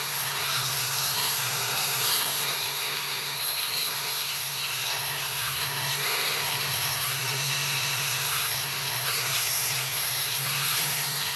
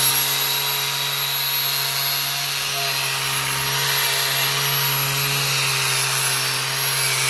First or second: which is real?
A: second